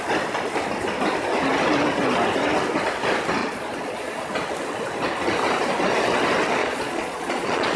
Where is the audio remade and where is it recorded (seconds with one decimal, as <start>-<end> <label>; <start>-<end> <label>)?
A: 0.0-3.4 recorded; 3.4-4.3 remade; 4.3-6.6 recorded; 6.6-7.8 remade